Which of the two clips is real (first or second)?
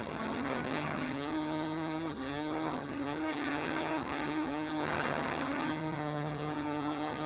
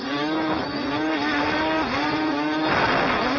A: second